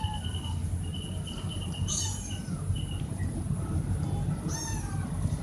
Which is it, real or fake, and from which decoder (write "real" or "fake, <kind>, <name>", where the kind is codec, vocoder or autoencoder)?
fake, vocoder, BigVGAN v2